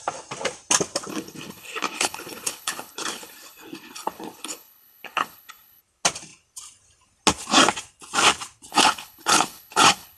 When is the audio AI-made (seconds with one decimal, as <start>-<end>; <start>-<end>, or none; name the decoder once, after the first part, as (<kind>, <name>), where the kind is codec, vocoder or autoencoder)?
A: 1.1-5.8 (codec, HILCodec); 8.7-10.2

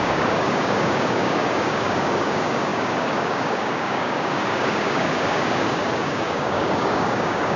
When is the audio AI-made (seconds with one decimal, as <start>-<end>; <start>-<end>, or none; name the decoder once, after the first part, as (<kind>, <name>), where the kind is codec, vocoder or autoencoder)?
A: 0.0-7.6 (codec, DAC)

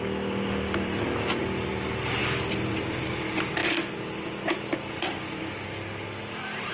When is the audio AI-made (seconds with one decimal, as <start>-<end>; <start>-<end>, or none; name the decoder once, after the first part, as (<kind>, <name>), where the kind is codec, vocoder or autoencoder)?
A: none

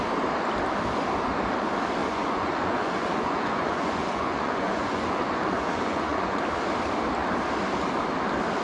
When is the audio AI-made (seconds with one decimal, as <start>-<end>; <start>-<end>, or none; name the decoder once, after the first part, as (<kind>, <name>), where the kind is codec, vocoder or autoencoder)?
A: 2.0-6.4 (vocoder, Vocos)

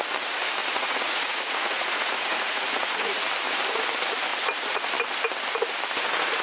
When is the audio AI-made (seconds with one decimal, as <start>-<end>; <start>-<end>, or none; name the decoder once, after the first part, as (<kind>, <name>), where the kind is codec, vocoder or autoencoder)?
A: 0.6-3.3 (vocoder, Vocos); 4.3-4.9

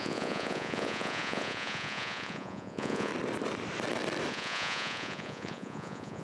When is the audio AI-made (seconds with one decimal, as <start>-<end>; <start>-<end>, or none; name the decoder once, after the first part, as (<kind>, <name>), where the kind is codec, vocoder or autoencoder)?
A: 0.0-3.1 (vocoder, Vocos); 4.3-6.2

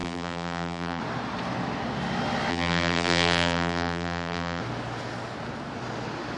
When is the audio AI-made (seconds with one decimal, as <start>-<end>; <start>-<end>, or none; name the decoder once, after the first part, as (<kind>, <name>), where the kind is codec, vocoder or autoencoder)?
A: 0.0-1.0 (vocoder, BigVGAN v2); 2.5-4.6

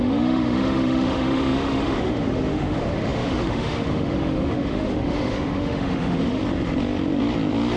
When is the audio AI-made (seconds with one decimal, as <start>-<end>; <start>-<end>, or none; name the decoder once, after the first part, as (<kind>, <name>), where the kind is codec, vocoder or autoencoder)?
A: 0.0-6.4 (autoencoder, DAC-VAE)